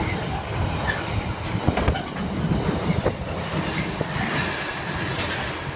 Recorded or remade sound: recorded